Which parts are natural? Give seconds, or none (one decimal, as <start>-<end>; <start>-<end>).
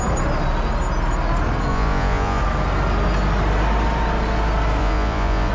0.0-1.7; 2.4-4.8